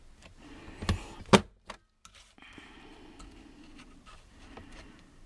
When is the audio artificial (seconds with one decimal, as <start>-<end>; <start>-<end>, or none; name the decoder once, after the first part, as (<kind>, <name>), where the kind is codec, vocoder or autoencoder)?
none